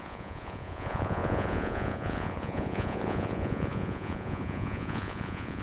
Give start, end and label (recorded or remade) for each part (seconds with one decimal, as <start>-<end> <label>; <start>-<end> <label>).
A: 0.0-5.6 remade